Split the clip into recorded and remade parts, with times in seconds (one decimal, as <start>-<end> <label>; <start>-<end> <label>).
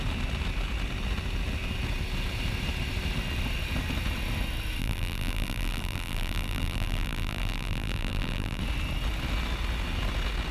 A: 0.0-4.8 recorded; 4.8-8.6 remade; 8.6-10.5 recorded